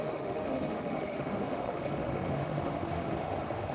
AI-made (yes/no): yes